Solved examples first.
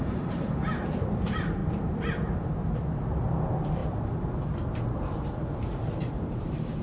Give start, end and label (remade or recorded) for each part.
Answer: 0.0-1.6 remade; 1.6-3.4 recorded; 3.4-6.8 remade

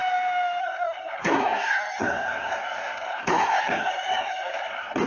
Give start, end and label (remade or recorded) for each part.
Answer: 0.0-0.6 recorded; 0.6-5.1 remade